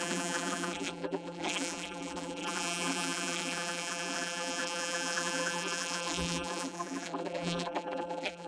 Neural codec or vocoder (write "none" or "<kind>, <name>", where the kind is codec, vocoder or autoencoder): vocoder, BigVGAN v2